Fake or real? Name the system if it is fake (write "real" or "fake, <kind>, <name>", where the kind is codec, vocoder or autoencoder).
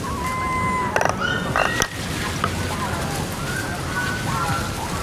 real